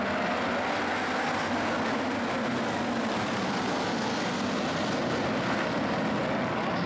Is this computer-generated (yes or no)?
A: no